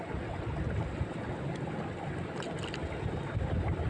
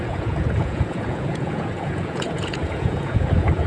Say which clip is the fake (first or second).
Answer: second